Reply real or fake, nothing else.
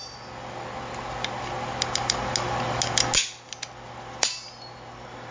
real